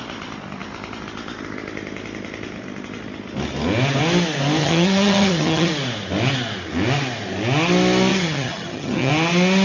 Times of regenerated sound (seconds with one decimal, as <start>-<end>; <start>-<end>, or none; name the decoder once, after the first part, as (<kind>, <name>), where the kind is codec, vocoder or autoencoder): 4.6-5.7 (vocoder, HiFi-GAN); 8.1-9.1